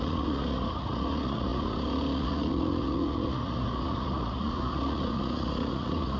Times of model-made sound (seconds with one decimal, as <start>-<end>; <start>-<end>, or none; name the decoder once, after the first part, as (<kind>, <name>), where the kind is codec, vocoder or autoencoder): 0.0-6.2 (vocoder, Vocos)